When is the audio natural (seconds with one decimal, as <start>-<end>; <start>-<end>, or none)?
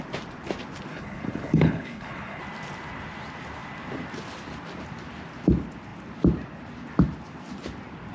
0.0-0.9; 2.4-8.1